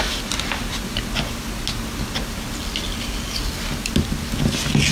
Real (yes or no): yes